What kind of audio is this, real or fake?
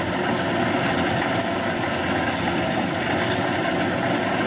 real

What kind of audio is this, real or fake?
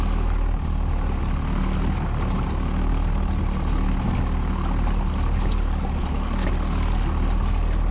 real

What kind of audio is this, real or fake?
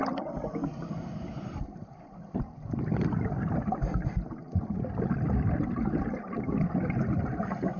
fake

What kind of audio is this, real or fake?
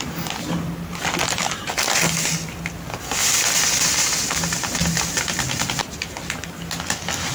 real